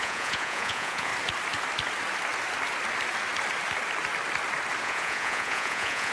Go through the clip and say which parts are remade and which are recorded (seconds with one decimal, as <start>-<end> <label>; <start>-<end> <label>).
0.0-1.1 remade; 1.1-4.8 recorded; 4.8-6.1 remade